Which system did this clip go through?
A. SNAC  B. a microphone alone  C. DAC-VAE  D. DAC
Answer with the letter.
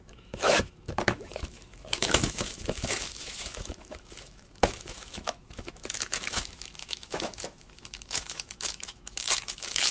C